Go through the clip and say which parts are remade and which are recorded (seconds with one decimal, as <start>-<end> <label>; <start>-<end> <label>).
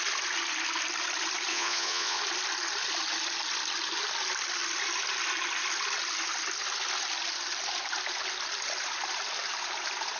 0.0-1.5 recorded; 1.5-2.2 remade; 2.2-10.2 recorded